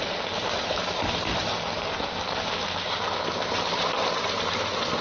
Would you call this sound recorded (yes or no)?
yes